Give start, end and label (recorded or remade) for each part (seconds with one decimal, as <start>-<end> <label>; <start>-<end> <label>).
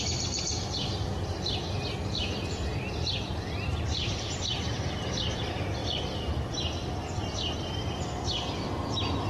0.0-9.3 recorded